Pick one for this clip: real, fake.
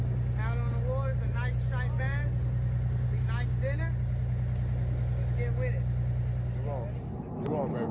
real